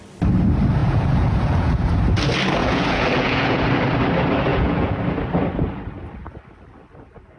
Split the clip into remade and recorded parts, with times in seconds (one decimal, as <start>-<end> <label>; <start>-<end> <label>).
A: 0.0-0.8 recorded; 0.8-2.0 remade; 2.0-2.6 recorded; 2.6-3.6 remade; 3.6-4.5 recorded; 4.5-5.0 remade; 5.0-7.4 recorded